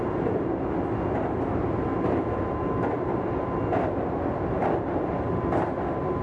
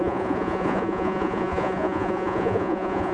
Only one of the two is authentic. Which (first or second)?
first